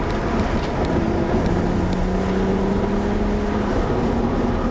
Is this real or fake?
real